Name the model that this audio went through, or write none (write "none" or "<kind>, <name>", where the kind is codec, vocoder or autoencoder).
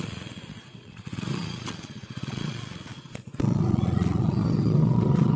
vocoder, Vocos